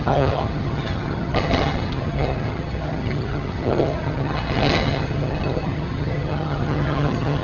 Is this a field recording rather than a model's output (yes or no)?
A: no